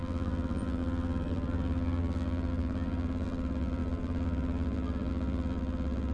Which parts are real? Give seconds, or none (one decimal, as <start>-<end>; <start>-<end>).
none